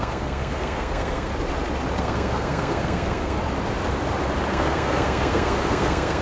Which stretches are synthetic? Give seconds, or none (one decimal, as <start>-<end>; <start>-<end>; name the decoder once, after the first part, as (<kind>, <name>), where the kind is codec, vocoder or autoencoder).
0.0-1.3 (codec, SNAC); 2.0-3.4; 4.5-6.2